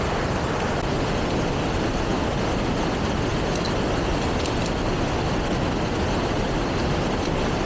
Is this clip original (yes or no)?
yes